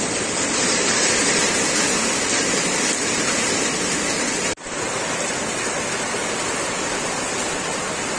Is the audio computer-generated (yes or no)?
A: no